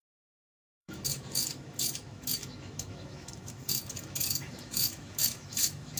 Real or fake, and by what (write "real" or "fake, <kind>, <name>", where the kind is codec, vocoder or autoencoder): fake, autoencoder, DAC-VAE